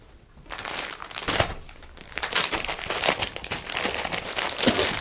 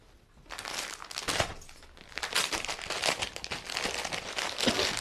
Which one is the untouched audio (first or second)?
second